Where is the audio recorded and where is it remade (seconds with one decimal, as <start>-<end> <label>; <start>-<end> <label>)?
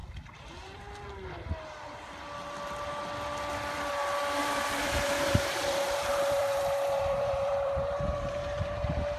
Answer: 0.0-4.4 recorded; 4.4-9.2 remade